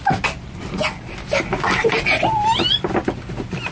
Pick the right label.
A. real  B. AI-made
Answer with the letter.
A